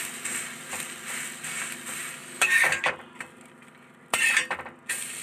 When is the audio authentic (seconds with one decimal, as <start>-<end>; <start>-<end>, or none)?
0.0-2.2; 2.9-5.2